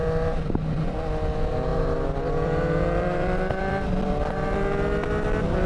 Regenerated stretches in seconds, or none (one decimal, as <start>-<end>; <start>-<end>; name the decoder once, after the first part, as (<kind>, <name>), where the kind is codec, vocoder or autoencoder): 0.0-0.8 (vocoder, BigVGAN v2); 1.7-4.1